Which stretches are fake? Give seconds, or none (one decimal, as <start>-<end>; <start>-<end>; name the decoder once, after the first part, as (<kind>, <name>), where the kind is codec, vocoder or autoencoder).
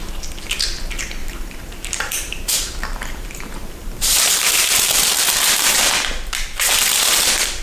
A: 1.2-5.8 (vocoder, BigVGAN v2)